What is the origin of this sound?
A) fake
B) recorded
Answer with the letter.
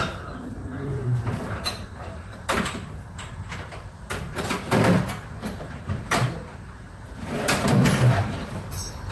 A